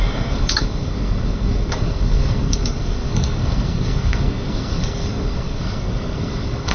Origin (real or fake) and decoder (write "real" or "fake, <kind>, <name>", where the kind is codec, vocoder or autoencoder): fake, codec, SNAC